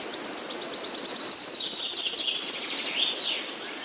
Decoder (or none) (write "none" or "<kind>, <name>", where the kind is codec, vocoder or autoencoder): none